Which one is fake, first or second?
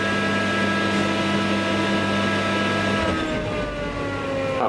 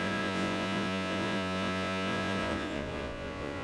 second